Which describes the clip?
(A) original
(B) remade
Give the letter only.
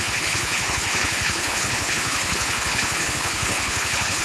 B